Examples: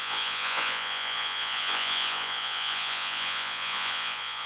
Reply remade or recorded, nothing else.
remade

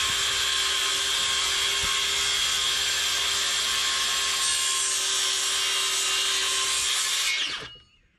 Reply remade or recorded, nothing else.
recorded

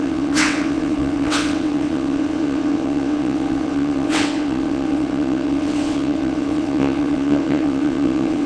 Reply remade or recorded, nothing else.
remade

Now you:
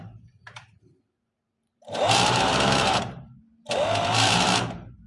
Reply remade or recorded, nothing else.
remade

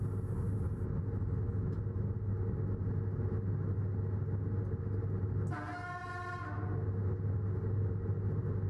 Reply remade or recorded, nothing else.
recorded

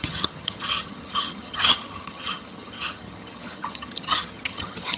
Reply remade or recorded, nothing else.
remade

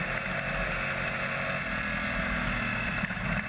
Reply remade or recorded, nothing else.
recorded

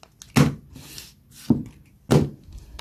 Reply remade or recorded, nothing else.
recorded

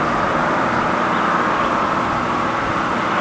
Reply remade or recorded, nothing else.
recorded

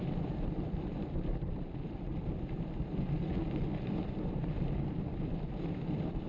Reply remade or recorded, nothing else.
remade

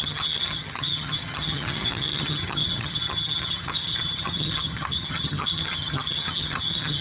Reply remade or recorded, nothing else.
remade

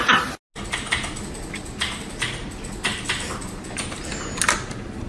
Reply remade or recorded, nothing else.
recorded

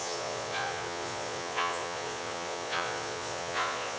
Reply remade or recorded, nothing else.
remade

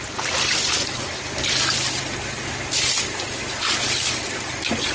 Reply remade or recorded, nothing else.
recorded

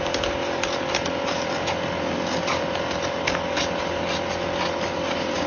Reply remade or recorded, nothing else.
recorded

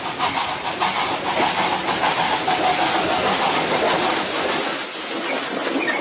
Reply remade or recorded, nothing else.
recorded